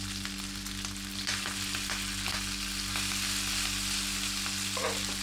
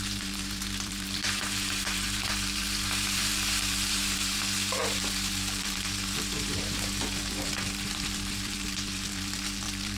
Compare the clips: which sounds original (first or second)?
first